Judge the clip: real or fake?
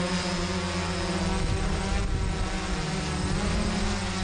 real